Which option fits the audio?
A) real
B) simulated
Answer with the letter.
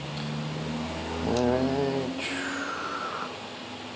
A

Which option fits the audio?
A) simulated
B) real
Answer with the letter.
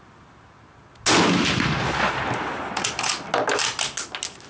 B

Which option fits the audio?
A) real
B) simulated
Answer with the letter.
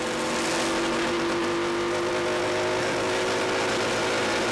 A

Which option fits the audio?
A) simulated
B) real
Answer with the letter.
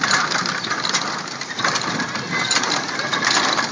B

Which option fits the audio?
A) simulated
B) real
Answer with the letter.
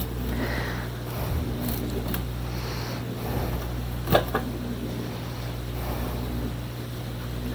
B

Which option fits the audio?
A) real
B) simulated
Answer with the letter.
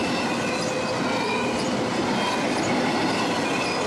A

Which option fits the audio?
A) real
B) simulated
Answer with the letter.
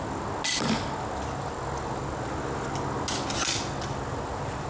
A